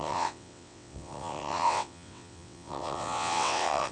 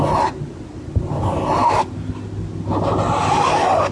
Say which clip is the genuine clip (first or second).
second